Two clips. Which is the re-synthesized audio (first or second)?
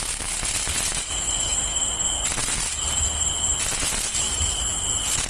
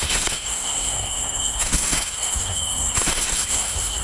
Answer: second